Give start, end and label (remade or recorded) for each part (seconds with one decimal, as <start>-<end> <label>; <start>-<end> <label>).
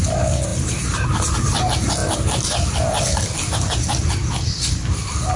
0.0-0.5 recorded; 0.5-1.6 remade; 1.6-5.4 recorded